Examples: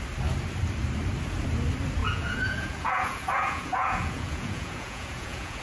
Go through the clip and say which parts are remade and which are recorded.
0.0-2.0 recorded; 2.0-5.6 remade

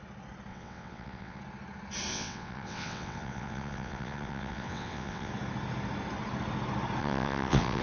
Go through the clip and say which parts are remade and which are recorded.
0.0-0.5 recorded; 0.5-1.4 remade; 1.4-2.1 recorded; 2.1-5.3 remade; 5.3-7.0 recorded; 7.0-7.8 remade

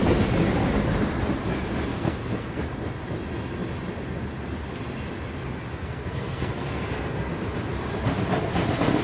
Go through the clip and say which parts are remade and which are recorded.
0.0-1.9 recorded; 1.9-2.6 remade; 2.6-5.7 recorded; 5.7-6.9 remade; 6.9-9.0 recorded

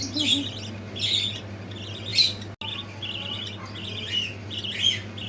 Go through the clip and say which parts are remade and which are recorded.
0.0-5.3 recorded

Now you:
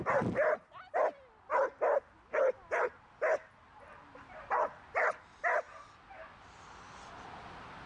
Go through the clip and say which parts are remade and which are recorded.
0.0-7.9 recorded

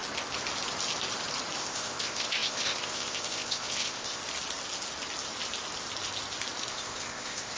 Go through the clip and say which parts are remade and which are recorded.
0.0-1.6 recorded; 1.6-4.2 remade; 4.2-6.7 recorded; 6.7-7.6 remade

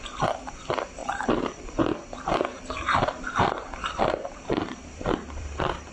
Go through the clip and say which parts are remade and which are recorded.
0.0-5.9 remade

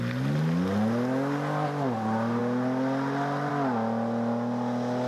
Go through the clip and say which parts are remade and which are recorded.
0.0-5.1 recorded